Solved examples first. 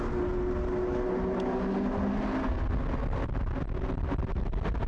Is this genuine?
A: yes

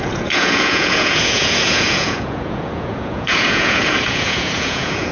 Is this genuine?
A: no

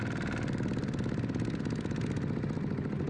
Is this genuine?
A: yes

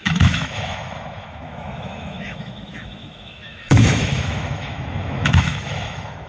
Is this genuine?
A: no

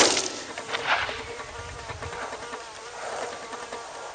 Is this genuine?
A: no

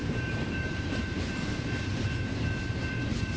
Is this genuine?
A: no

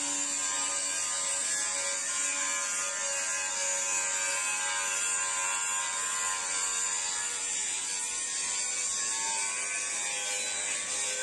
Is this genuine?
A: yes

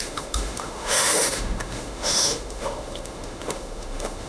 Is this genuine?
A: no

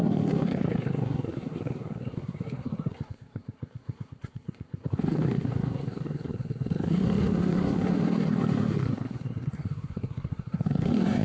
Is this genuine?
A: no